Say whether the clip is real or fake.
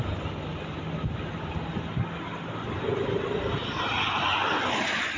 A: real